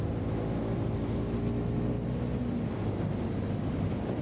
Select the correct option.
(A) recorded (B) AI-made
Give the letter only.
A